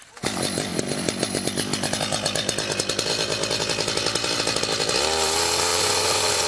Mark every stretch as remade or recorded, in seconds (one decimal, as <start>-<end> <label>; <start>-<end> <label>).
0.0-5.7 recorded; 5.7-6.5 remade